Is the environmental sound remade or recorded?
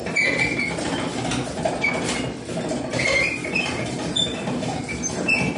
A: recorded